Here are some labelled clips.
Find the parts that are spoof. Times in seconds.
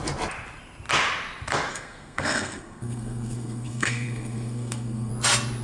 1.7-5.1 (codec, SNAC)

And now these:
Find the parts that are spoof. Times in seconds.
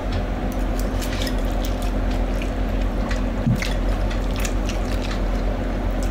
none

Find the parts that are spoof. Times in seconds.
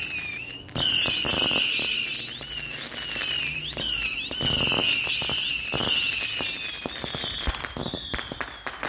none